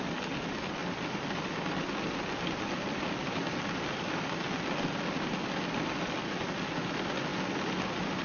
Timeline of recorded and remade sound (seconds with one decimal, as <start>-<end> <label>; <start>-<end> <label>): 0.0-8.2 recorded